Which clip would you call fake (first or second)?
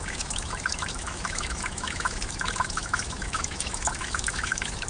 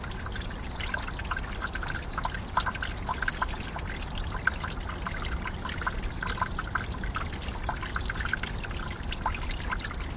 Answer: first